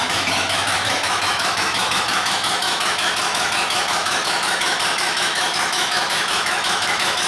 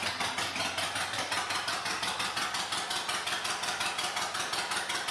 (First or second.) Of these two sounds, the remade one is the first